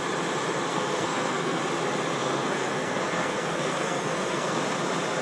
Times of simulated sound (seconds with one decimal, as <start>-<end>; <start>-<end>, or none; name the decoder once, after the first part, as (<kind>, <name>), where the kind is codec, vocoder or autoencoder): 0.7-1.6 (codec, SNAC); 2.2-4.6